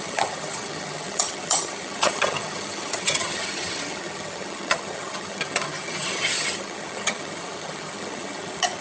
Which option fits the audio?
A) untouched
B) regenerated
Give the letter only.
B